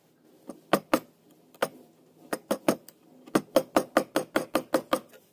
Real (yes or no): yes